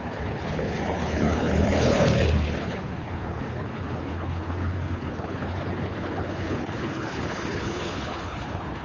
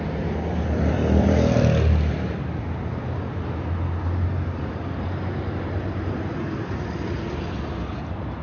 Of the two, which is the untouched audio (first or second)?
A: second